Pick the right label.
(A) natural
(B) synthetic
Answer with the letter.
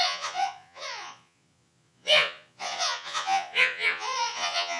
B